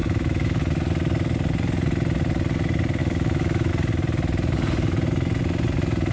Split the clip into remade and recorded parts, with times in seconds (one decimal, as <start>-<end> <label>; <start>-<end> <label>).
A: 0.0-0.6 remade; 0.6-3.0 recorded; 3.0-3.7 remade; 3.7-6.1 recorded